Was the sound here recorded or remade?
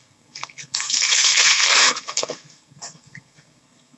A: remade